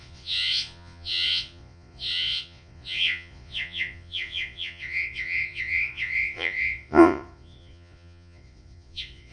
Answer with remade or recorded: remade